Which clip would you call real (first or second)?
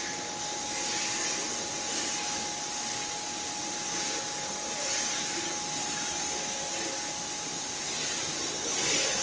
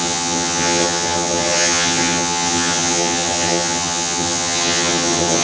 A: first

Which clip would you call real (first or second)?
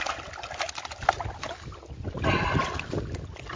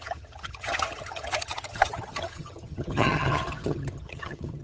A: first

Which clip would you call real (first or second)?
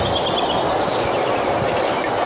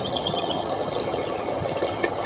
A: first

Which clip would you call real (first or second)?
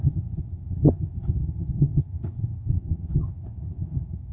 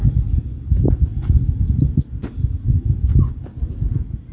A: second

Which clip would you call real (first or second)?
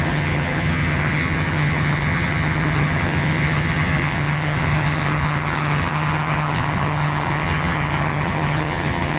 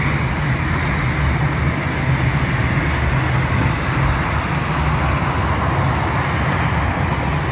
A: second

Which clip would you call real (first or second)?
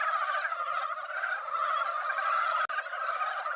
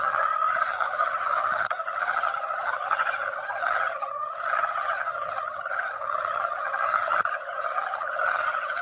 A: first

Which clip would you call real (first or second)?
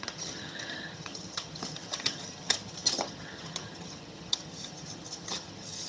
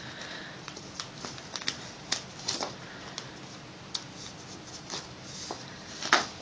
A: second